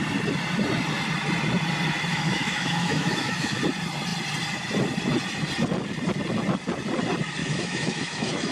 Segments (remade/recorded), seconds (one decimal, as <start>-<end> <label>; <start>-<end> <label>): 0.0-2.1 recorded; 2.1-3.6 remade; 3.6-7.4 recorded; 7.4-8.5 remade